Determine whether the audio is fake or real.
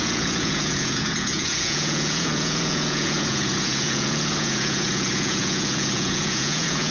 fake